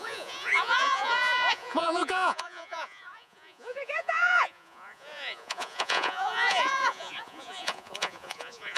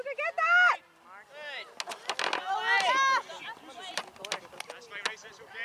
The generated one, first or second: first